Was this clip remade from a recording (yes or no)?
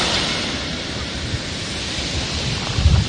no